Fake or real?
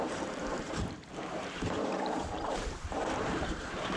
fake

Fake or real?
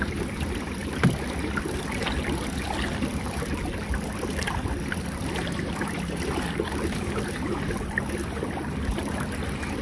real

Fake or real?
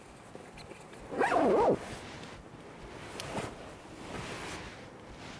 real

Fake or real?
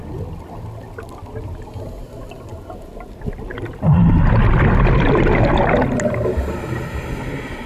real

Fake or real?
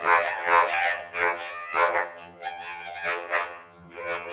fake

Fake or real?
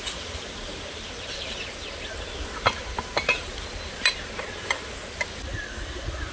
real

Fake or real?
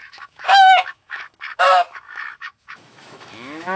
fake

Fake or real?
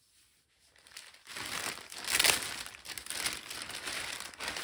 real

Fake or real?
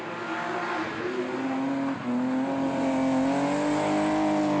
real